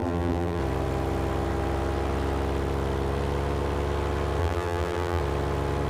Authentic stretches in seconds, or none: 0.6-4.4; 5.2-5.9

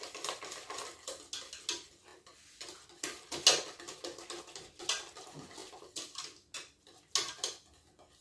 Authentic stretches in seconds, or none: 0.0-8.2

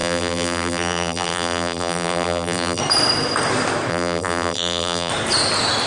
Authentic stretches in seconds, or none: 2.8-3.9; 5.1-5.9

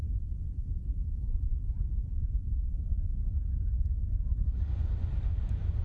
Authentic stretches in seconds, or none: 4.0-5.1

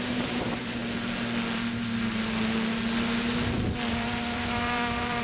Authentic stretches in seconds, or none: 0.8-3.9

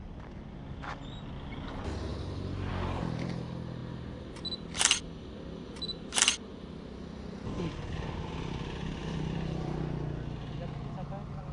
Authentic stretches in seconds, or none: 0.0-2.1; 2.7-6.5; 8.3-9.0; 9.8-11.5

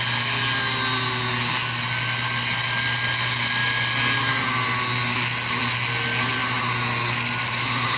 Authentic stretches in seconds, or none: 0.0-8.0

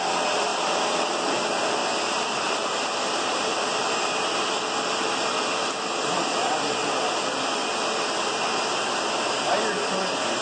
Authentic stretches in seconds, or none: 0.0-0.5; 1.4-1.8; 4.0-10.4